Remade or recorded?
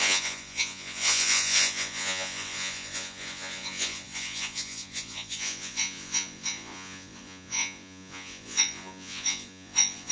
remade